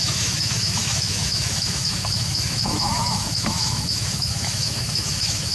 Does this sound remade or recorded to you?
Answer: remade